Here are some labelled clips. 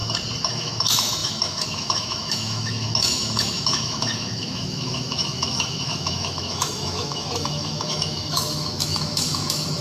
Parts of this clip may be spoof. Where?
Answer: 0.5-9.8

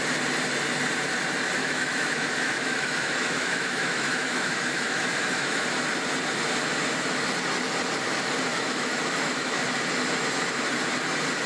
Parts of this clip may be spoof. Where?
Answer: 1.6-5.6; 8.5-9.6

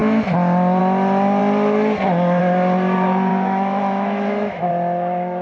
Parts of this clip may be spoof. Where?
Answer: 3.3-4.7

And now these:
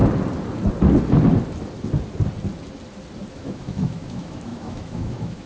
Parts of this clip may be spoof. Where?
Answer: 3.3-5.5

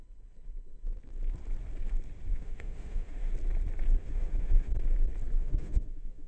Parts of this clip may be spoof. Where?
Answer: 2.3-3.3; 4.0-4.7; 5.4-6.3

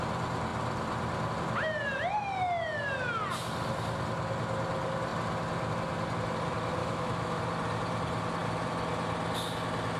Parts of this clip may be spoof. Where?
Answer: 6.8-7.4

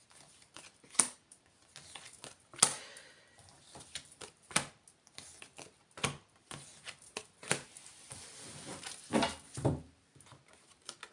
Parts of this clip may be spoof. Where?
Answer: none